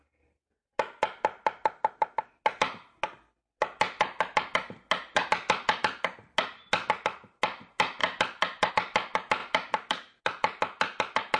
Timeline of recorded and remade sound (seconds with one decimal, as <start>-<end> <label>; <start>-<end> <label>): 0.0-11.4 recorded